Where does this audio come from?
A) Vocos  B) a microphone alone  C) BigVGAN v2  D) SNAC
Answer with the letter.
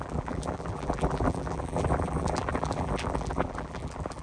C